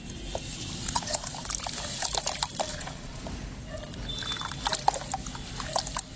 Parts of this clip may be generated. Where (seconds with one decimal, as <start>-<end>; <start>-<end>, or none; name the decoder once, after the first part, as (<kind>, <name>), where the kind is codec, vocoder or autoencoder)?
0.8-1.3 (vocoder, Vocos); 2.7-3.2